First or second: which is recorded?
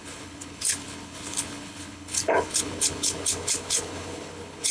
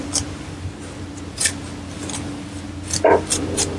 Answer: second